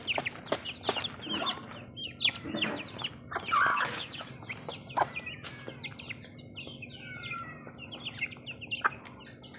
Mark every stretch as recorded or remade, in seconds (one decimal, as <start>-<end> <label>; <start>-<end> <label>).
0.0-3.7 recorded; 3.7-4.3 remade; 4.3-9.6 recorded